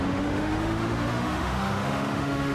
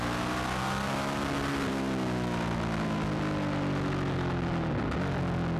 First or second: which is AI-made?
first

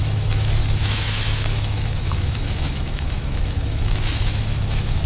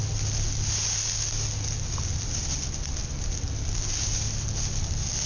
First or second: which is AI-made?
first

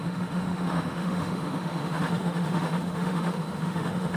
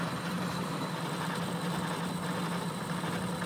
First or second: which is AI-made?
first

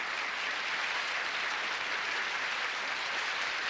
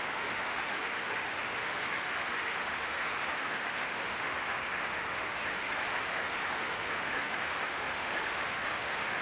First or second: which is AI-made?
second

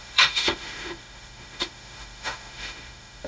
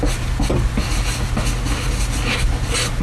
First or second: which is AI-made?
first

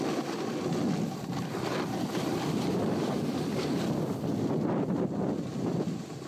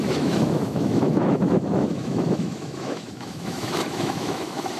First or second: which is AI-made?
second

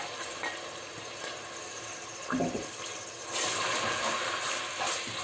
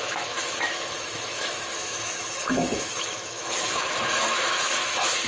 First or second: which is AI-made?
second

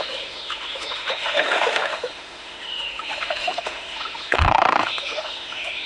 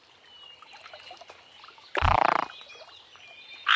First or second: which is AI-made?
first